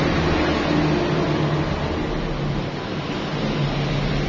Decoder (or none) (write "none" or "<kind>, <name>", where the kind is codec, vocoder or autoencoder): none